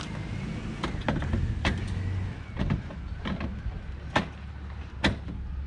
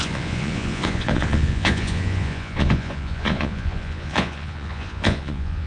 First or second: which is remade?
second